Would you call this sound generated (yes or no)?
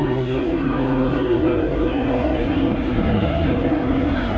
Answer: yes